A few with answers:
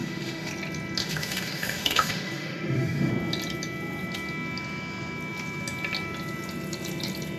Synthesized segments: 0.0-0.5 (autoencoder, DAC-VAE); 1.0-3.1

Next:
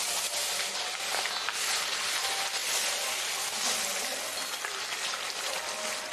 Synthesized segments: none

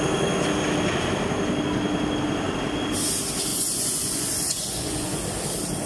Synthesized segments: 3.5-5.2 (vocoder, Vocos)

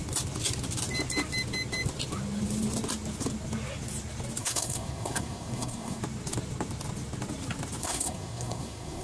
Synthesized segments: 4.4-6.0 (codec, SNAC); 7.8-9.0

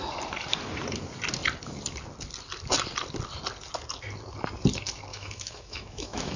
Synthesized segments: 5.1-6.4 (autoencoder, DAC-VAE)

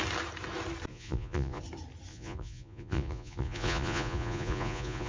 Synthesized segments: 0.9-1.6 (vocoder, Vocos); 2.1-5.1

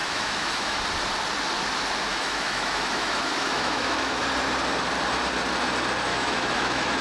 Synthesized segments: 0.0-0.8 (autoencoder, DAC-VAE); 2.1-4.2; 6.1-7.0

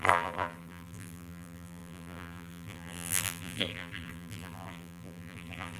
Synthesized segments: 0.0-5.8 (vocoder, BigVGAN v2)